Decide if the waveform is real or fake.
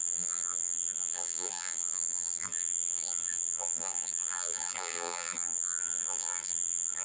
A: fake